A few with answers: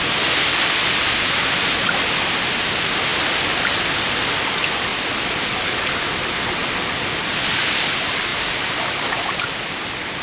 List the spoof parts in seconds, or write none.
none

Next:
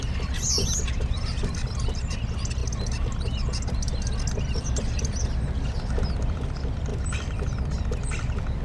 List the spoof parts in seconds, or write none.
0.0-2.6 (vocoder, BigVGAN v2); 4.4-8.6